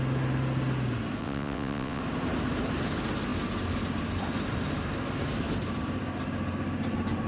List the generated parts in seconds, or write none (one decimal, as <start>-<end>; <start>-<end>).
1.2-2.0